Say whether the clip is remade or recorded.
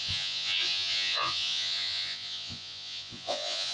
remade